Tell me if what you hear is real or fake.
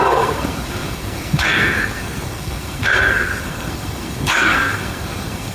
fake